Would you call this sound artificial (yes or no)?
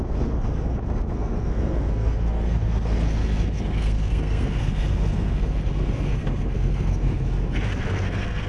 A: yes